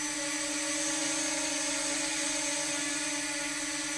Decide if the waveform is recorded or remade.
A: recorded